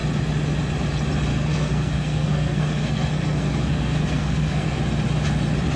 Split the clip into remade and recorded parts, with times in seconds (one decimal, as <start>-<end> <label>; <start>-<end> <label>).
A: 0.0-1.3 recorded; 1.3-4.8 remade; 4.8-5.8 recorded